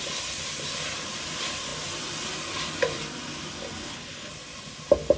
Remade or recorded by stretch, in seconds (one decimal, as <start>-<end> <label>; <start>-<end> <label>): 0.0-3.8 recorded; 3.8-4.3 remade; 4.3-5.2 recorded